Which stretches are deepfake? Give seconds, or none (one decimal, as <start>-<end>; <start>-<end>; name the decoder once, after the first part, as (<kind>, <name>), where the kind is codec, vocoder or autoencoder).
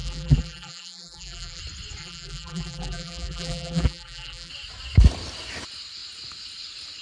0.0-1.6 (vocoder, BigVGAN v2); 2.0-4.5